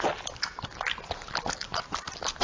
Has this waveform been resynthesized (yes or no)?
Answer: no